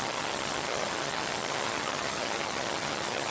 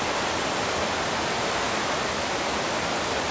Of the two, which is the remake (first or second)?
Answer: first